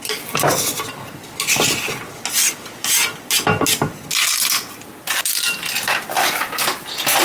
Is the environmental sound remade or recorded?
recorded